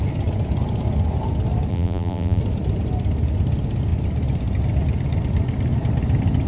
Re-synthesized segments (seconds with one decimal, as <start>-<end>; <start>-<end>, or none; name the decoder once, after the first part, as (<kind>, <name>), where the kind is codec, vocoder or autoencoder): 1.7-2.4 (vocoder, BigVGAN v2)